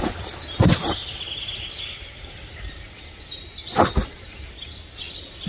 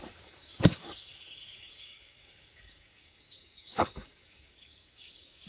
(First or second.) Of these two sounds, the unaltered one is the first